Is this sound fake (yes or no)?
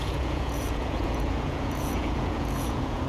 yes